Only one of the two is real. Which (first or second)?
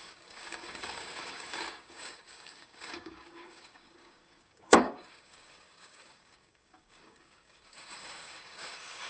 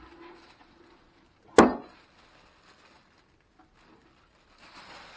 second